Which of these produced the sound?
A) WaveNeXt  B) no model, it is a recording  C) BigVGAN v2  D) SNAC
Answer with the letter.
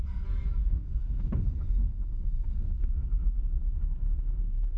D